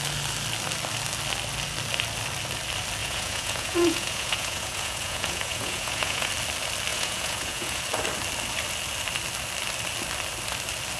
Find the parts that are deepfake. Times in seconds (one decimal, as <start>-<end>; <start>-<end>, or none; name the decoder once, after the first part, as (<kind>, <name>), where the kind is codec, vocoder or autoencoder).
3.0-6.3 (vocoder, Vocos); 6.9-7.8